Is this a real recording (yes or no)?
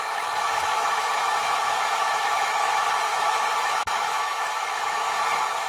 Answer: no